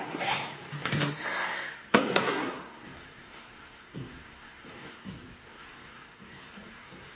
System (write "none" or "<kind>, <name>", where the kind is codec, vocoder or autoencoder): codec, SNAC